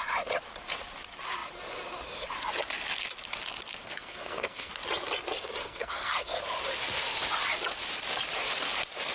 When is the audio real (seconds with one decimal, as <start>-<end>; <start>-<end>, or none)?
0.0-3.8; 4.7-5.6; 6.4-9.1